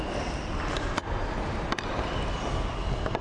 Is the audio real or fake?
real